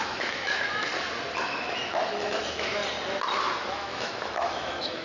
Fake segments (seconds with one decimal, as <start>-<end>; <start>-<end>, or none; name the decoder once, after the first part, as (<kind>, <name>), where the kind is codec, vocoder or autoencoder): 0.0-0.9 (autoencoder, DAC-VAE); 1.4-2.8; 3.7-5.0